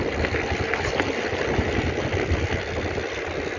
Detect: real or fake real